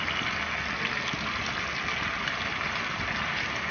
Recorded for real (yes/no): yes